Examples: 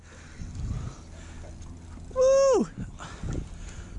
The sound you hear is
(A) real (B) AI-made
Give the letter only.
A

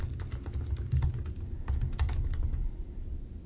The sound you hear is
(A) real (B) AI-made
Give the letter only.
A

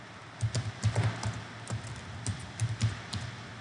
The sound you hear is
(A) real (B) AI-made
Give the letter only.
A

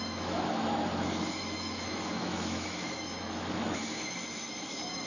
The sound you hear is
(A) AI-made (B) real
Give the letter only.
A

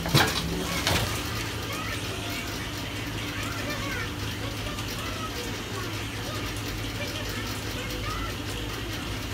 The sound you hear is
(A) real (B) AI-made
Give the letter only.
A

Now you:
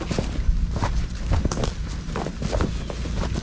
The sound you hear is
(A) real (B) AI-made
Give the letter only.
A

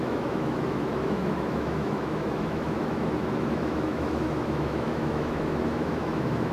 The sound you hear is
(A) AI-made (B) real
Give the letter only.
A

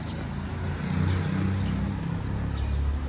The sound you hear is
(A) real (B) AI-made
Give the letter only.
A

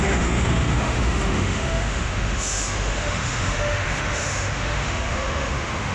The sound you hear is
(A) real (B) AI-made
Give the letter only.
B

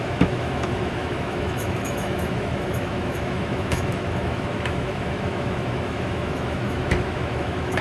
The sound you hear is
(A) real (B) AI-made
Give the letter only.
B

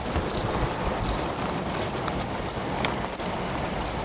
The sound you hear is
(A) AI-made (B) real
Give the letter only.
B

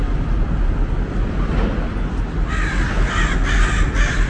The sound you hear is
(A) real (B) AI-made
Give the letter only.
A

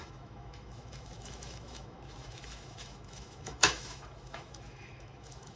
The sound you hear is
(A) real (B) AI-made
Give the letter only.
B